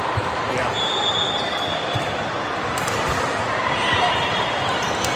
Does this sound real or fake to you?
real